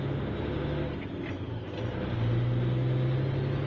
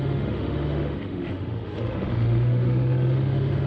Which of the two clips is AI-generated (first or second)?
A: second